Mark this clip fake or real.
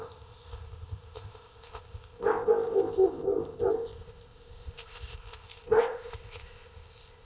fake